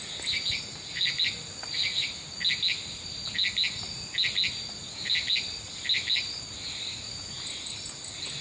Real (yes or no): yes